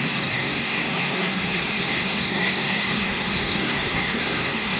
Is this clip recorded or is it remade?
remade